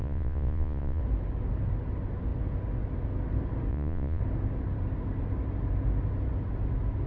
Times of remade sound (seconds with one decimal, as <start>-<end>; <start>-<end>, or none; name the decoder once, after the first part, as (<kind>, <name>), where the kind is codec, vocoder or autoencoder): 0.0-1.0 (vocoder, Vocos); 3.7-4.2